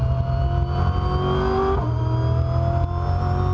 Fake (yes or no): no